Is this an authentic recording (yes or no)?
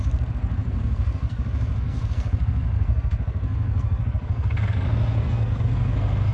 no